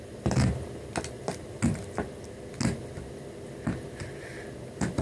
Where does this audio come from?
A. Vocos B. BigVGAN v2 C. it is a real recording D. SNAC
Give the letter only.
C